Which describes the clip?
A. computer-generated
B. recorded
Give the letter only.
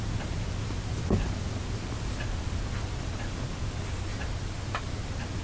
B